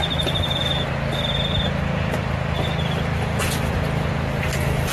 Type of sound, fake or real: real